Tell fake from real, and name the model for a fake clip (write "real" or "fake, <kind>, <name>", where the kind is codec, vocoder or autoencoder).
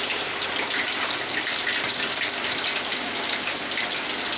real